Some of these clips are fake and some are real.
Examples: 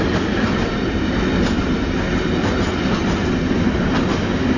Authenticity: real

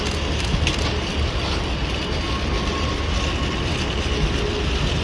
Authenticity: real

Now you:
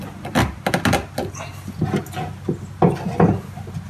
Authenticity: real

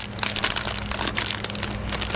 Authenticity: real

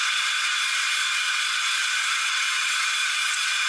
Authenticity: fake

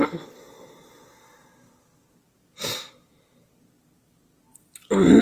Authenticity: real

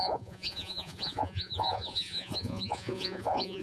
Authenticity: fake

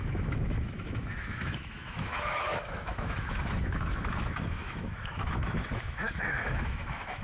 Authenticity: fake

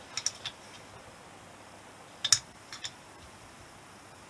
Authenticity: real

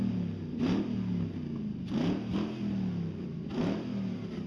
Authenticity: real